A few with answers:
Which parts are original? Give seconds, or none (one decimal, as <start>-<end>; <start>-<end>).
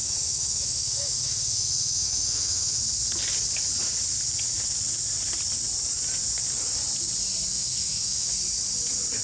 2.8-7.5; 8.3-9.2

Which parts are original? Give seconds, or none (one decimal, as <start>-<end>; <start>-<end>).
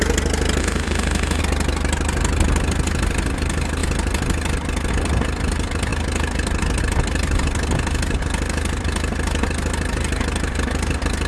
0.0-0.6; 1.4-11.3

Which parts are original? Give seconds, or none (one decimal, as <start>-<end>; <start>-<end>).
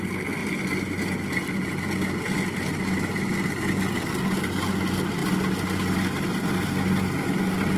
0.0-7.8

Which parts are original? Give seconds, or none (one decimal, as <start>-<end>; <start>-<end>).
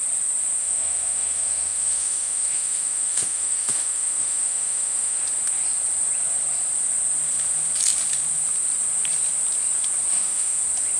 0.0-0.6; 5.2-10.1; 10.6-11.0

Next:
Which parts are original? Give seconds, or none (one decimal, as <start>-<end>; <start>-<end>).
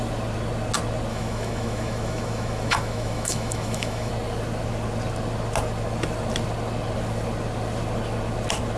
0.0-1.1; 4.1-8.8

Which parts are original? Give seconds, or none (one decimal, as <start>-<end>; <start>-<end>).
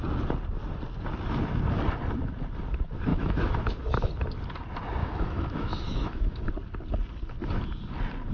0.0-3.1; 4.1-5.0; 6.5-8.3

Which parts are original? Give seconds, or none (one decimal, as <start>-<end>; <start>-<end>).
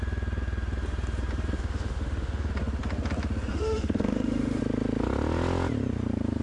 0.0-1.6; 2.5-3.5; 4.6-6.4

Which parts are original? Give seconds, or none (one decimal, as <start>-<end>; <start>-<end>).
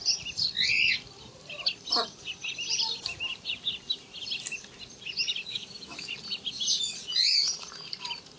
0.0-5.5; 6.1-8.4